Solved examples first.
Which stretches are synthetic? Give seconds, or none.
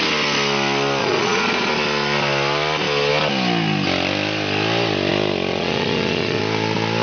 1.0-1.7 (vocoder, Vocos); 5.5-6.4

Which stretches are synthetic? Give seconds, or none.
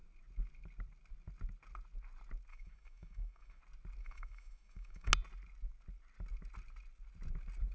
2.5-3.6 (autoencoder, DAC-VAE); 4.0-5.1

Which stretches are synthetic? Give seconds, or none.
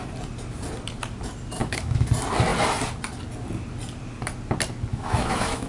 1.6-2.1 (autoencoder, DAC-VAE); 4.9-5.7